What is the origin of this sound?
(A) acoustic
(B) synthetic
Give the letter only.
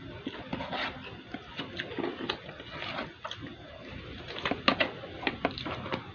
A